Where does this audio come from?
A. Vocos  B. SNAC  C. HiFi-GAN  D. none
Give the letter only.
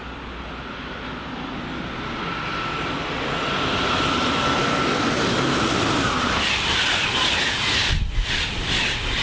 D